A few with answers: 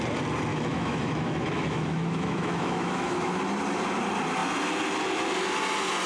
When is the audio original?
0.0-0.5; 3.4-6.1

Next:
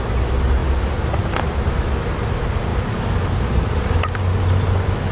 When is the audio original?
0.0-5.1

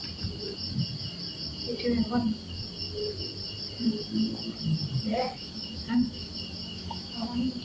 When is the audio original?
0.0-5.1; 6.3-6.7